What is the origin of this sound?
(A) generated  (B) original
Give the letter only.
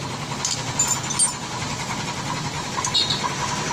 B